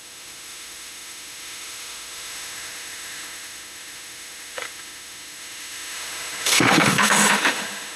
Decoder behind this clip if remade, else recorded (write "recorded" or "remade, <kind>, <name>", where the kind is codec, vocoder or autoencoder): remade, autoencoder, DAC-VAE